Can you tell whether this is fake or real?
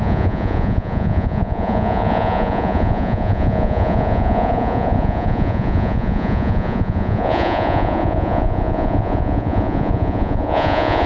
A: fake